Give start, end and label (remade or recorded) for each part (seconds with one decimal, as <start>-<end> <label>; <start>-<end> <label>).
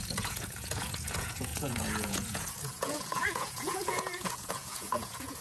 0.0-5.4 remade